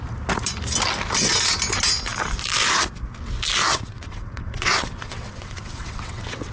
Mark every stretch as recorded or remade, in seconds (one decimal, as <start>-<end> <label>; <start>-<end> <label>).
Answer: 0.0-3.7 recorded; 3.7-6.5 remade